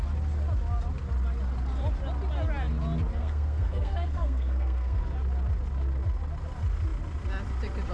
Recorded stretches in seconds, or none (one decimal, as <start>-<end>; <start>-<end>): 0.0-3.2; 5.0-7.9

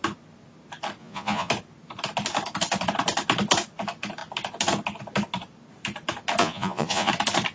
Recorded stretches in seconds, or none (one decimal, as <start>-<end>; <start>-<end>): 0.0-1.0; 1.5-6.4; 7.1-7.5

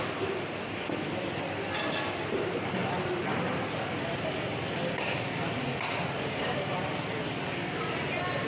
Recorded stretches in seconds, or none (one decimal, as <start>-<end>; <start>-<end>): 0.0-8.5

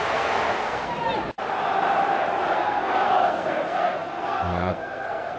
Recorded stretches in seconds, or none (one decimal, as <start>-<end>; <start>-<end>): 0.9-2.5

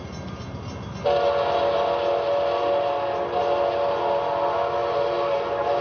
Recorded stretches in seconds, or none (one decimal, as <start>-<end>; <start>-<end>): 0.0-5.8